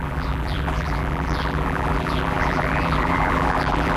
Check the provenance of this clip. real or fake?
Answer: fake